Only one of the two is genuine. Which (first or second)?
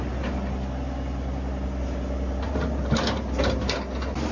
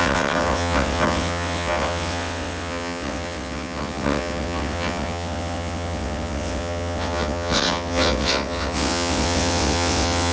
first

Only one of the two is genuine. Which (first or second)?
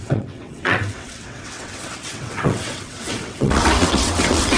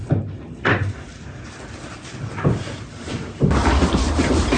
second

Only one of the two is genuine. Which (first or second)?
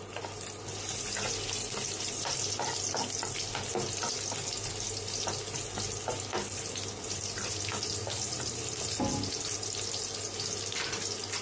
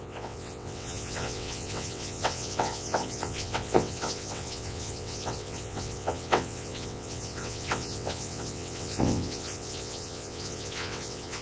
first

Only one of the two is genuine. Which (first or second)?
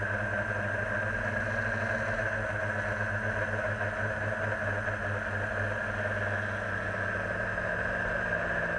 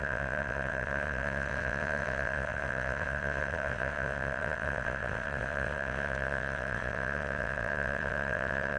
first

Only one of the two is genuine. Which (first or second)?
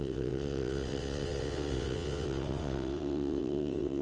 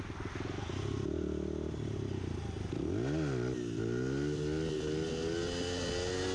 second